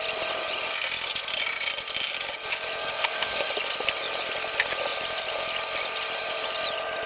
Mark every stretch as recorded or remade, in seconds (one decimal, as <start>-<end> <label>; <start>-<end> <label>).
0.0-2.8 recorded; 2.8-3.5 remade; 3.5-7.1 recorded